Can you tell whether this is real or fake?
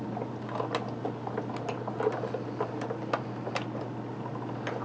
real